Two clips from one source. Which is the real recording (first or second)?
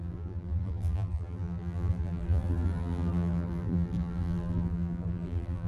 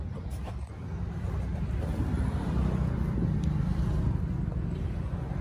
second